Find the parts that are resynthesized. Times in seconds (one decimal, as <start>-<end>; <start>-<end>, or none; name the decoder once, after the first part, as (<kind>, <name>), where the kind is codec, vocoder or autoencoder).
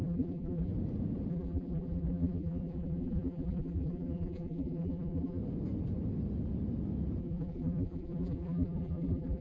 0.0-0.7 (vocoder, BigVGAN v2); 1.3-5.4; 7.2-9.4